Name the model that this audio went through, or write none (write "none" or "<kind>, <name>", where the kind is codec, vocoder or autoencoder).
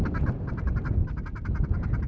none